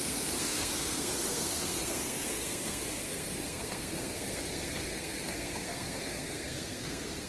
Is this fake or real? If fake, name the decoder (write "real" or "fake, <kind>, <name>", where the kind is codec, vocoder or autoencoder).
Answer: fake, codec, SNAC